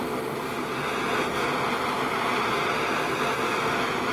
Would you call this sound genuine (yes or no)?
yes